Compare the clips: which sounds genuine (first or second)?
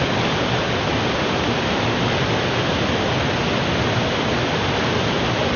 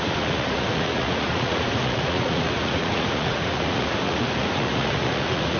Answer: first